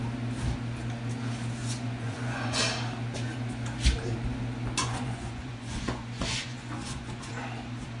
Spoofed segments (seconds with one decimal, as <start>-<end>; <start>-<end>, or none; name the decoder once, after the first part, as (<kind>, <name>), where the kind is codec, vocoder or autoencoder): 1.6-2.6 (vocoder, Vocos); 4.8-7.3